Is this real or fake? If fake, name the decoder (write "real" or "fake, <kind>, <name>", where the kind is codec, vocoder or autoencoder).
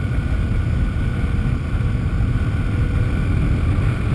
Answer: real